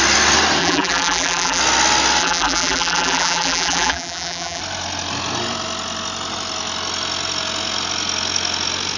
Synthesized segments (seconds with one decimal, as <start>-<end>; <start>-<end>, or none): 0.6-1.6; 2.2-4.6